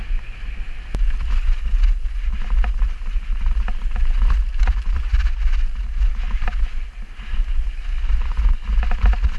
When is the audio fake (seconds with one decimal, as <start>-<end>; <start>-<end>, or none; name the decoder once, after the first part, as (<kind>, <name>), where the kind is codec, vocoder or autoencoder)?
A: none